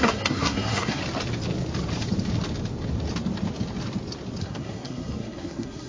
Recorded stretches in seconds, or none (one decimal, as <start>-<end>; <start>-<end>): 1.0-4.4